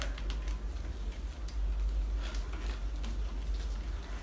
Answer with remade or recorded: recorded